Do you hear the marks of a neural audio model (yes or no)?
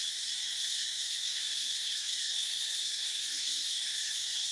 yes